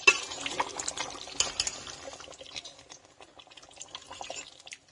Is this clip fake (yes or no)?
no